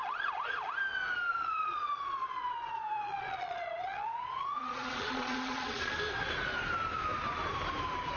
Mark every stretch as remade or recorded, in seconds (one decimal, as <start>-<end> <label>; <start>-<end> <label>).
0.0-0.7 remade; 0.7-1.3 recorded; 1.3-5.9 remade; 5.9-8.2 recorded